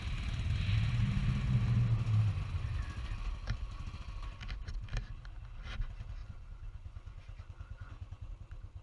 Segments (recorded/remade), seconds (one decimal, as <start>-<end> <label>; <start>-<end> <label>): 0.0-6.2 recorded; 6.2-8.3 remade; 8.3-8.8 recorded